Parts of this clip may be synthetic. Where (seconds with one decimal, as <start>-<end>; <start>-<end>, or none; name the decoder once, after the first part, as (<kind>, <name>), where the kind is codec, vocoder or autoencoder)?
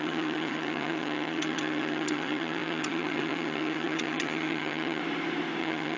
0.0-5.0 (vocoder, HiFi-GAN); 5.6-6.0